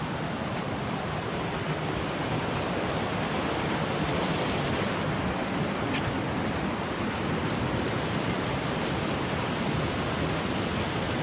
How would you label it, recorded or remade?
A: recorded